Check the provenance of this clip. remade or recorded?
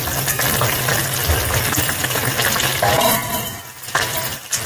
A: recorded